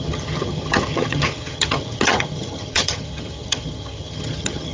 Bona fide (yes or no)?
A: no